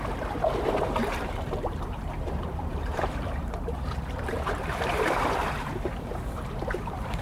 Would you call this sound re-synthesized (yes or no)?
yes